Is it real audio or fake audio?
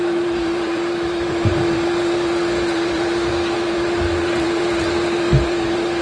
fake